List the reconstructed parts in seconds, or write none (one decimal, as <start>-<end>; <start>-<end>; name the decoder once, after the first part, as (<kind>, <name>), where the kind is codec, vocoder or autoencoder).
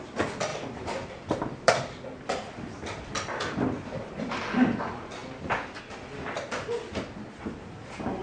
0.5-4.8 (vocoder, BigVGAN v2)